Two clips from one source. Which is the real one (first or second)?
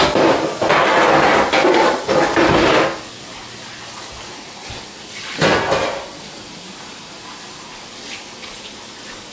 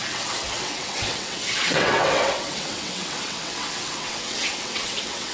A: first